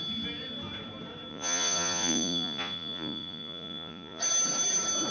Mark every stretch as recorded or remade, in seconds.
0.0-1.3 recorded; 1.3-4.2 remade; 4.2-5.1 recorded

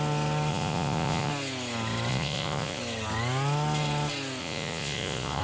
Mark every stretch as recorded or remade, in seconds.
0.0-0.5 recorded; 0.5-1.3 remade; 1.3-2.1 recorded; 2.1-2.8 remade; 2.8-4.4 recorded; 4.4-5.4 remade

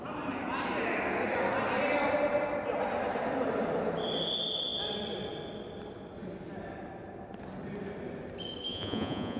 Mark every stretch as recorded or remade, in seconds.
0.0-8.7 recorded; 8.7-9.4 remade

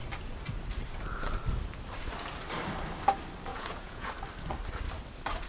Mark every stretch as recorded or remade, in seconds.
0.0-3.5 recorded; 3.5-4.1 remade; 4.1-5.5 recorded

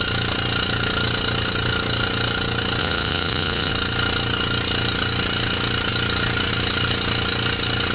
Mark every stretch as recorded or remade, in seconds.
0.0-2.8 recorded; 2.8-3.7 remade; 3.7-7.9 recorded

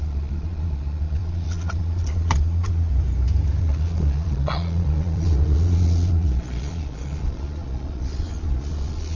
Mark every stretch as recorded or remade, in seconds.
0.0-2.9 remade; 2.9-3.6 recorded; 3.6-9.1 remade